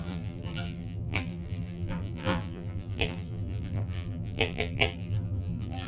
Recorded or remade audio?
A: remade